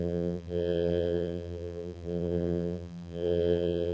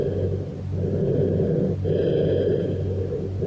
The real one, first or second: second